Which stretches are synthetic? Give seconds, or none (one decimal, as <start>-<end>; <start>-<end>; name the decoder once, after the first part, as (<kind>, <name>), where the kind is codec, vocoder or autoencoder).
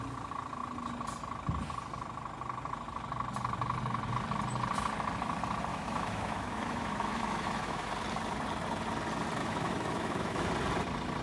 5.7-7.9 (autoencoder, DAC-VAE); 9.4-10.5